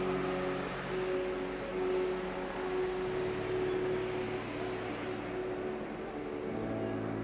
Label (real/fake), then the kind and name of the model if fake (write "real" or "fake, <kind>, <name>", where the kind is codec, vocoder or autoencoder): real